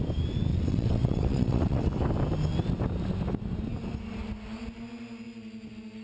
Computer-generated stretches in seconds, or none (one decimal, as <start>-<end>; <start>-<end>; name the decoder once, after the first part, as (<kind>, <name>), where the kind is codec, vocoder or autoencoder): 0.5-1.8 (vocoder, WaveNeXt)